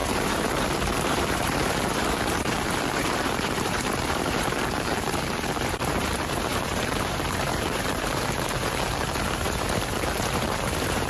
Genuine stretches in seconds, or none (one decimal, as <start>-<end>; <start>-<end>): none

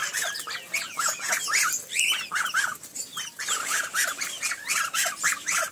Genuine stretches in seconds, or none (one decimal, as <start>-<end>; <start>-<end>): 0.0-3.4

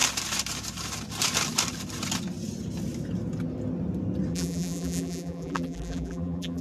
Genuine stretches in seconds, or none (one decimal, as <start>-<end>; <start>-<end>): 0.0-4.3

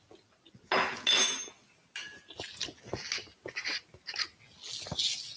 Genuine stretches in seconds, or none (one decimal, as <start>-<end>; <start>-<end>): 0.0-5.4

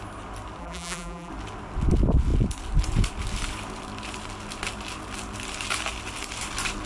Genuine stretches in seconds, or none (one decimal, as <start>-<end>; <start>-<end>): 0.0-0.6; 1.3-6.9